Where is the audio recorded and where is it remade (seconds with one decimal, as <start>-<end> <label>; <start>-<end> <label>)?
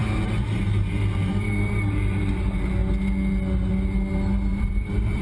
0.0-2.3 remade; 2.3-4.5 recorded; 4.5-5.2 remade